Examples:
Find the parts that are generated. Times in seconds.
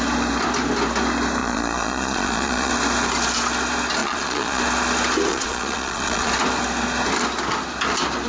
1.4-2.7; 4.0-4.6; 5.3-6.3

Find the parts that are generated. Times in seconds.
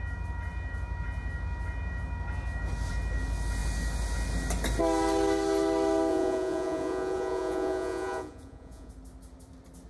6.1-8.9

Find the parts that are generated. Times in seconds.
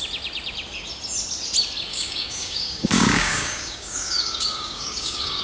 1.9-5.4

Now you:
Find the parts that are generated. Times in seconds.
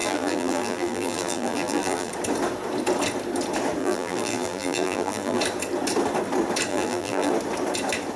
0.0-2.1; 3.8-5.4; 6.7-7.3